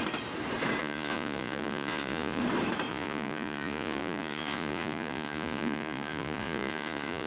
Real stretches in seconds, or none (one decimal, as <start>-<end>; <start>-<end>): 0.0-0.8; 2.4-2.9